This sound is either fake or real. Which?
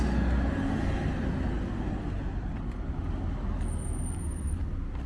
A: real